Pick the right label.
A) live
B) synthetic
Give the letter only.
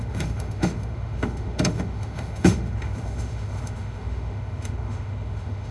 B